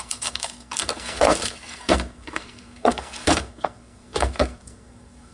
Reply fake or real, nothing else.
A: fake